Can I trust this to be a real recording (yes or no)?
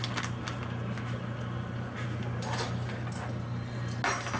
yes